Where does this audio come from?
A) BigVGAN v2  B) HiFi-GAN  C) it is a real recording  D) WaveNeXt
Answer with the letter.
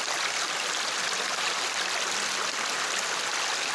C